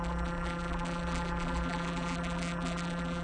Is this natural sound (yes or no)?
no